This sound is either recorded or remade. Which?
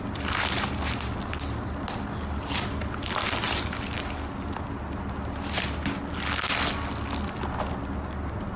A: recorded